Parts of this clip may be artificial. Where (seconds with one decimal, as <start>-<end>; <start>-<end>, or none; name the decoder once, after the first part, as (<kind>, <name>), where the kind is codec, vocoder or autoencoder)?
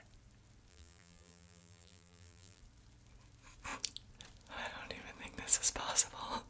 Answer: 0.7-2.6 (vocoder, BigVGAN v2)